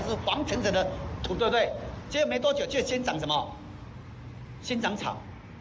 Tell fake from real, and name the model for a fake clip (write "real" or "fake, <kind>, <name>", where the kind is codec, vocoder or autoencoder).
real